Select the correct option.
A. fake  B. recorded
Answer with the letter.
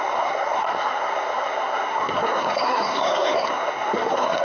A